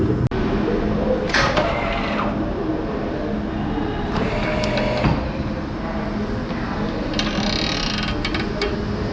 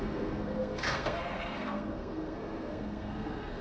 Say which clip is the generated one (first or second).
second